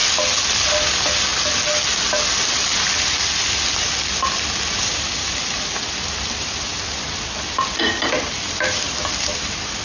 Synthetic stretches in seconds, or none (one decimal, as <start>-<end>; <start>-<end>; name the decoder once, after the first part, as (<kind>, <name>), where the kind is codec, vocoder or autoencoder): 0.0-1.3 (vocoder, BigVGAN v2); 4.8-6.7; 7.8-9.8